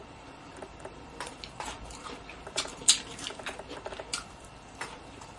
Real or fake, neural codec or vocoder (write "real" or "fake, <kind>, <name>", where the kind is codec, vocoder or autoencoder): fake, vocoder, BigVGAN v2